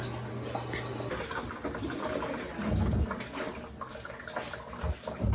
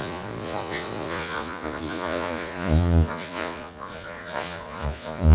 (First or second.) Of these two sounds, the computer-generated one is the second